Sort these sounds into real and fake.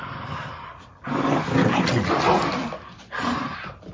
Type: real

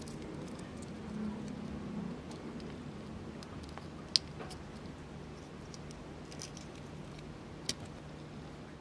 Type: real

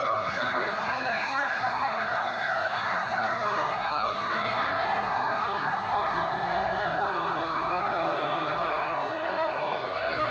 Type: fake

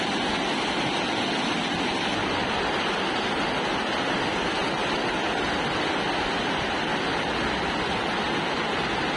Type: real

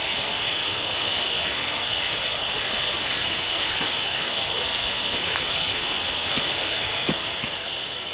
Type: fake